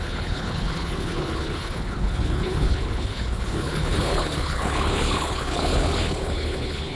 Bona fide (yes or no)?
no